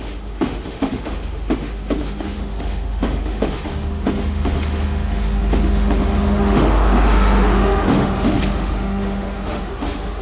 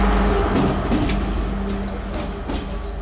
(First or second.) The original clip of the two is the second